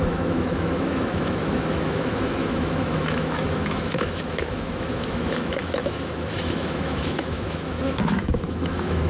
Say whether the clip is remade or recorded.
remade